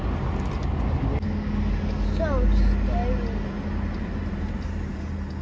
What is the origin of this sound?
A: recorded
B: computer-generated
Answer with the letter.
A